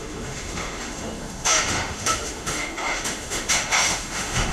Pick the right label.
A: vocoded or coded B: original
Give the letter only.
A